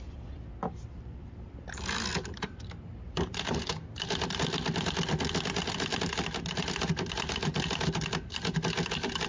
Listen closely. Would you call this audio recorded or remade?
recorded